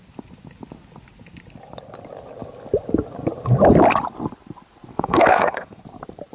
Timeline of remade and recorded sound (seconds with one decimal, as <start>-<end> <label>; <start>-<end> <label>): 0.0-4.9 recorded; 4.9-5.8 remade; 5.8-6.3 recorded